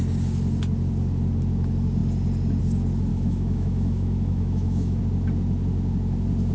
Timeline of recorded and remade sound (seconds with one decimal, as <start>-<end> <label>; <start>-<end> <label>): 0.0-3.1 recorded; 3.1-5.0 remade; 5.0-6.5 recorded